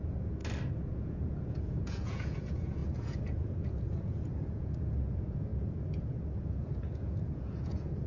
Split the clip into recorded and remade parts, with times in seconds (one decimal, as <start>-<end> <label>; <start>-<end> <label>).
0.0-0.4 remade; 0.4-1.0 recorded; 1.0-8.1 remade